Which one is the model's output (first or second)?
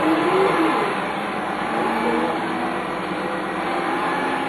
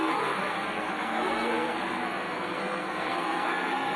second